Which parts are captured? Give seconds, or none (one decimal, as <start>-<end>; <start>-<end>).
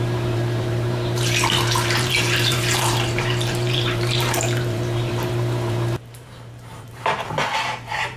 none